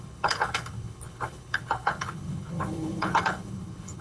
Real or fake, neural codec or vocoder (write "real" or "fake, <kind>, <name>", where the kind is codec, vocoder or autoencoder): fake, codec, HILCodec